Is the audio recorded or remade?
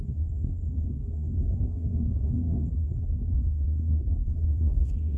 remade